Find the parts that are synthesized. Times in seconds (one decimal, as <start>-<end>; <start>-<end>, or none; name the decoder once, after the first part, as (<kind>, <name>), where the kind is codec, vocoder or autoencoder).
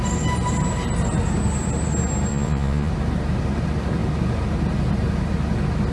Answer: 2.3-2.9 (vocoder, Vocos)